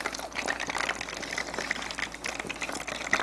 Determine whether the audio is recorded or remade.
recorded